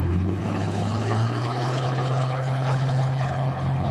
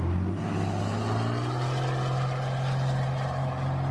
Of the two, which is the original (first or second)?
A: second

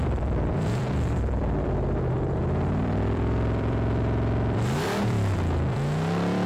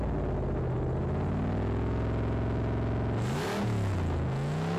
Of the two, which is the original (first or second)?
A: second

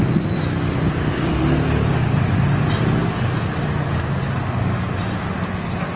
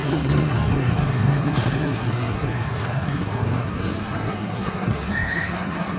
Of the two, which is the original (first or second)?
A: first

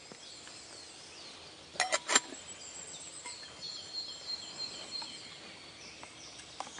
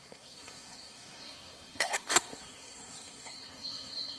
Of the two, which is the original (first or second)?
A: first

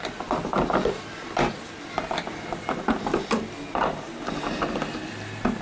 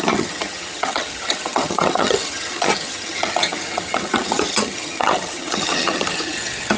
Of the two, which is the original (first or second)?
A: first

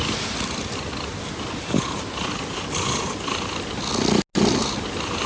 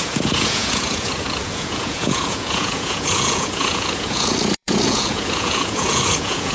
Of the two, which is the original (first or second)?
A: first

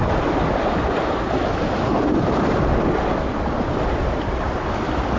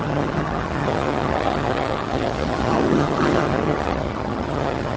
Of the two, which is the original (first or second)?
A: first